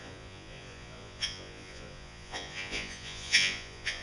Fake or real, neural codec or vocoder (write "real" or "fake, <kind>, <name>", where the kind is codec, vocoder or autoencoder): fake, vocoder, Vocos